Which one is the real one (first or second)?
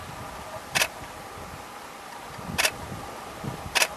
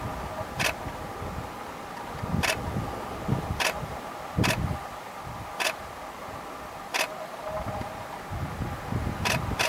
second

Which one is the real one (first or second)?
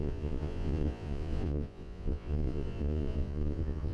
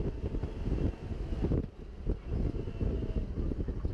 second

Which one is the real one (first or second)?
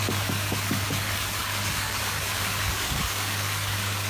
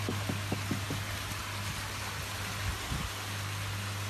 second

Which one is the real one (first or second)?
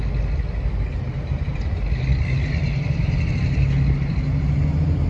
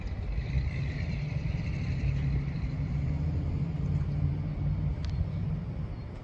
first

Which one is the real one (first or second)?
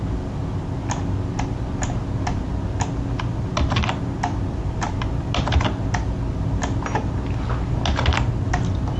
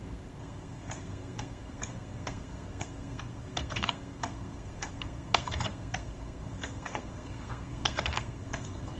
first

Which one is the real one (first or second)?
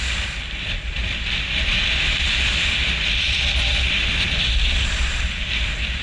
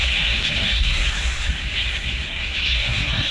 first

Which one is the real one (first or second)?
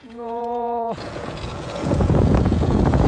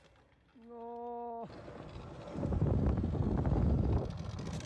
second